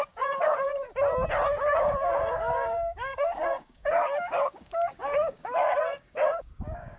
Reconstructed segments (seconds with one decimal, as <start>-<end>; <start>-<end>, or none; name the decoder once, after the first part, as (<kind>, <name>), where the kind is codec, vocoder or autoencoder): 0.0-0.9 (codec, DAC); 1.5-7.0